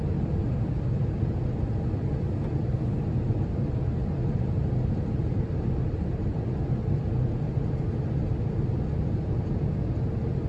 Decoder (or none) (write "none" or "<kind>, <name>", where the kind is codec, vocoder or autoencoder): none